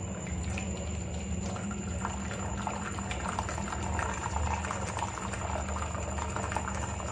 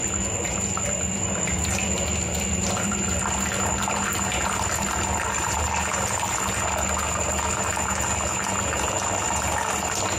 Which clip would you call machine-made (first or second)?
first